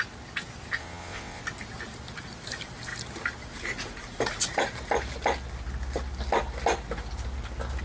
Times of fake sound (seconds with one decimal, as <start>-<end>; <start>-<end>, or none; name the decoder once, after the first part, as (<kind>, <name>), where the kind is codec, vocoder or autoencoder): 0.8-1.4 (vocoder, WaveNeXt)